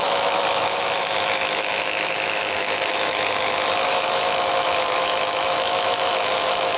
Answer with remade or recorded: remade